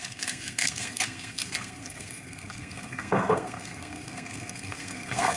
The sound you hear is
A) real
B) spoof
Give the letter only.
B